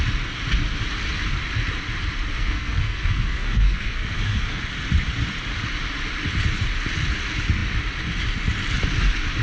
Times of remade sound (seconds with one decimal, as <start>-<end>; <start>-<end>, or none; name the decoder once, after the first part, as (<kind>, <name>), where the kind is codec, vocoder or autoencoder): 2.3-4.6 (codec, SNAC)